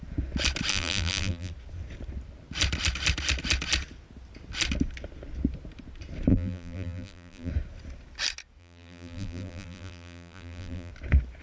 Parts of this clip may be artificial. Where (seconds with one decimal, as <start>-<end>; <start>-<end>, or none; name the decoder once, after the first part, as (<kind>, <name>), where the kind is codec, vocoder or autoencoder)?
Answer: 0.7-1.5 (vocoder, BigVGAN v2); 6.3-7.5; 8.6-10.9